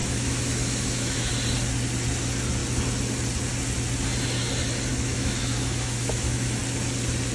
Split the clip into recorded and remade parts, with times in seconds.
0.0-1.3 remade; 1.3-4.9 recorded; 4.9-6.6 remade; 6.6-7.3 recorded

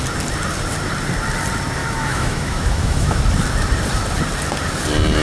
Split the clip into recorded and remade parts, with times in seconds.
0.0-1.8 recorded; 1.8-3.2 remade; 3.2-5.2 recorded

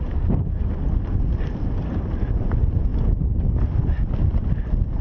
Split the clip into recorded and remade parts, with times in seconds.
0.0-5.0 recorded

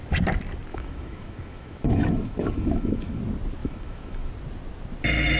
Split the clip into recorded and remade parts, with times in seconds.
0.0-0.7 recorded; 0.7-3.2 remade; 3.2-3.6 recorded; 3.6-4.3 remade; 4.3-5.4 recorded

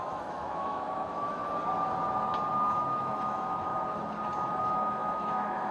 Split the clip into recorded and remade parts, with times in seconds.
0.0-1.4 remade; 1.4-2.5 recorded; 2.5-3.7 remade; 3.7-4.6 recorded; 4.6-5.7 remade